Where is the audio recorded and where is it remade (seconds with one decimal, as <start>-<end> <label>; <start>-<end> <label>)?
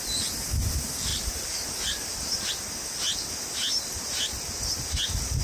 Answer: 0.0-1.1 recorded; 1.1-2.5 remade; 2.5-5.4 recorded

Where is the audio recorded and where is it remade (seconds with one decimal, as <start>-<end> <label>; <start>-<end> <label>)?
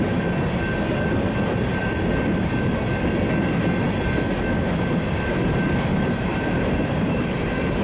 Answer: 0.0-5.9 recorded; 5.9-7.2 remade; 7.2-7.8 recorded